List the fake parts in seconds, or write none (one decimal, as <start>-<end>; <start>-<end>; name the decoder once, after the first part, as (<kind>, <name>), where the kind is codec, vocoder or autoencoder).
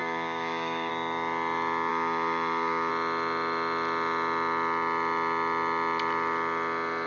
0.0-0.9 (codec, DAC); 1.9-2.9